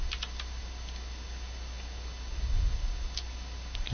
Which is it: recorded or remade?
recorded